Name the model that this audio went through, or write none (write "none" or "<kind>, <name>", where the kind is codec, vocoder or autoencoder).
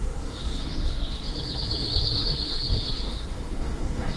codec, SNAC